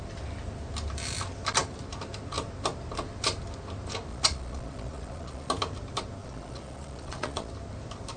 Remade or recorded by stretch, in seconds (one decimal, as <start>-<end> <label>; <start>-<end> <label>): 0.0-4.1 recorded; 4.1-5.5 remade; 5.5-6.2 recorded; 6.2-7.5 remade; 7.5-8.2 recorded